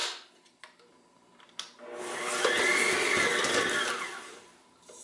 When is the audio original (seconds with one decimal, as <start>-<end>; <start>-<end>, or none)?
0.0-5.0